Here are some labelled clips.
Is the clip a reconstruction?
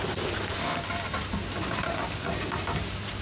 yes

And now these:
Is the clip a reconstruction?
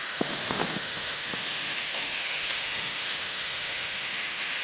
yes